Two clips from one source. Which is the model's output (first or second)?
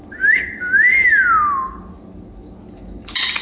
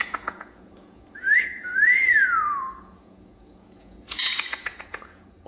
second